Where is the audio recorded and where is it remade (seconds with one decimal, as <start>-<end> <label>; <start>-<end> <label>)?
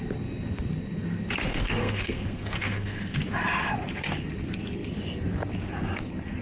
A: 0.0-1.5 recorded; 1.5-3.2 remade; 3.2-6.4 recorded